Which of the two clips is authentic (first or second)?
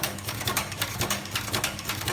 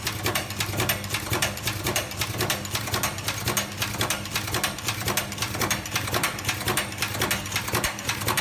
second